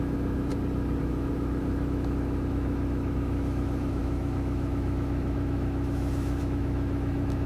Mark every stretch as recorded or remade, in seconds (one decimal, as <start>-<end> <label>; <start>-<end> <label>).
0.0-0.5 remade; 0.5-1.0 recorded; 1.0-7.5 remade